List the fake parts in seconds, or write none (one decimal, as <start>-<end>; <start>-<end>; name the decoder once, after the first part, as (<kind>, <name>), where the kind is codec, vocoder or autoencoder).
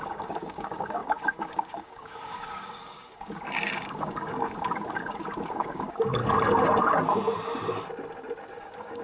0.0-6.2 (codec, DAC); 8.6-9.0